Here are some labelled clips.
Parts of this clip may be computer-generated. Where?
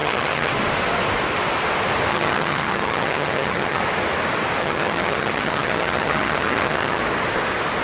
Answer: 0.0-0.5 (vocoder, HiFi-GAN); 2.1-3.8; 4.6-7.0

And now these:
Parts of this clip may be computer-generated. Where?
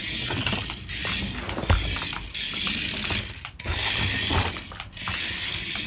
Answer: none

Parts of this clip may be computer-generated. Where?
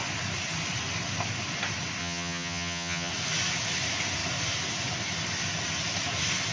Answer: 2.0-3.1 (vocoder, HiFi-GAN)